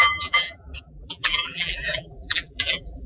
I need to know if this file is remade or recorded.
remade